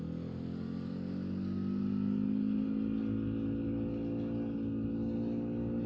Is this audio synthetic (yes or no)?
no